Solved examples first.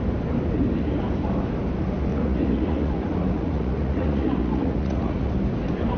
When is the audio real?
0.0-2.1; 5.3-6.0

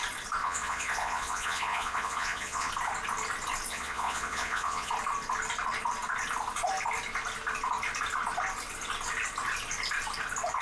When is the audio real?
0.0-0.4; 2.7-3.7; 4.9-10.6

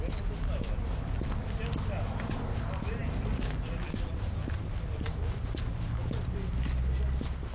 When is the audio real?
0.0-7.5

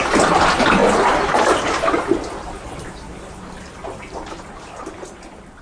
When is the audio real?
0.0-5.6

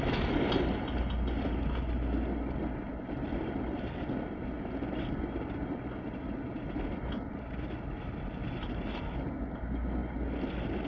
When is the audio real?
0.0-10.9

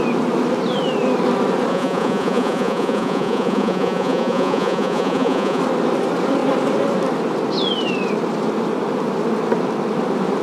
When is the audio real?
0.0-1.7; 5.6-10.4

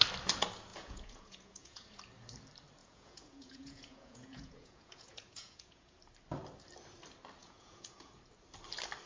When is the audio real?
0.0-0.7; 2.0-2.8; 6.0-7.4; 8.1-9.1

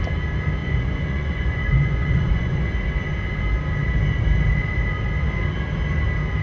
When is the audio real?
0.0-0.6; 2.7-6.4